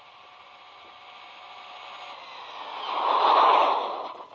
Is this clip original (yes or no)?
yes